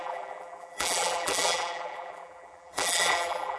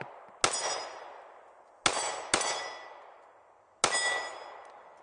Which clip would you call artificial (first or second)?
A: first